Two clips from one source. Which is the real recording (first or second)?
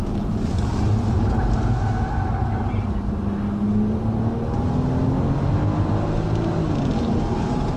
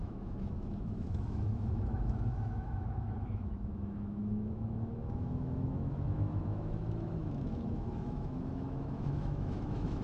first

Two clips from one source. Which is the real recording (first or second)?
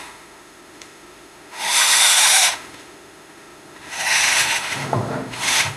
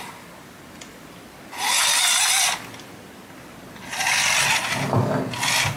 second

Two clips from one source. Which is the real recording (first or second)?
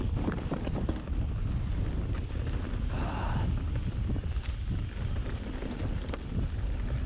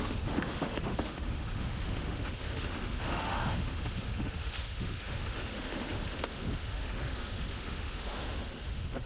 first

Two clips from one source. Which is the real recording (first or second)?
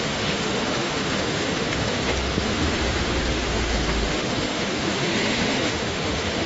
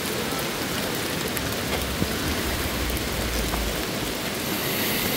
second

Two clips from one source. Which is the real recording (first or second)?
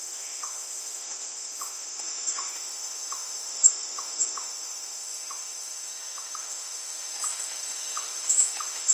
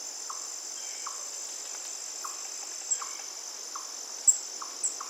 second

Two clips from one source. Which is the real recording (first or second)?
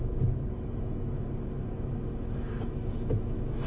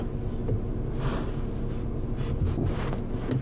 second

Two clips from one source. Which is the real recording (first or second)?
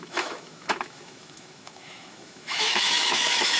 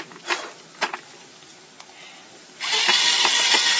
second